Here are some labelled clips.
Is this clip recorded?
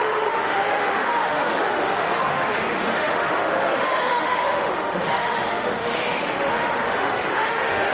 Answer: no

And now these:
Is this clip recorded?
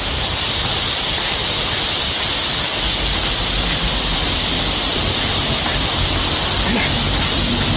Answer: yes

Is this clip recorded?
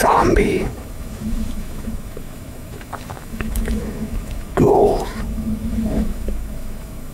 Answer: no